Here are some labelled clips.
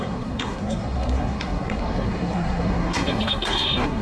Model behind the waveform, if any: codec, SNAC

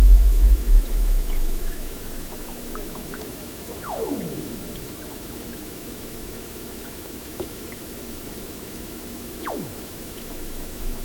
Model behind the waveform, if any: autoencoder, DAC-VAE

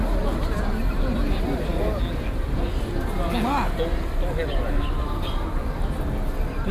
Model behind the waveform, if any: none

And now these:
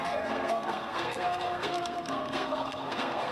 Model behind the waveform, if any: codec, SNAC